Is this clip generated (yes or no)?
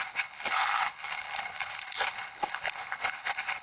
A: yes